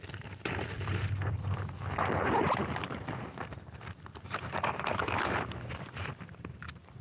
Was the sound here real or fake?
fake